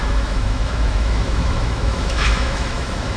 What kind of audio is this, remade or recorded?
remade